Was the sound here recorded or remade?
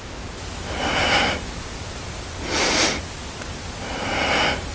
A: recorded